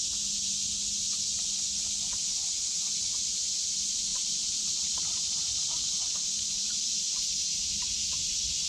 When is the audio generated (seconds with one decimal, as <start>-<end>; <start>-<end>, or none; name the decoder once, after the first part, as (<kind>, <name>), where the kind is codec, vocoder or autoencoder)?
4.1-7.8 (vocoder, BigVGAN v2)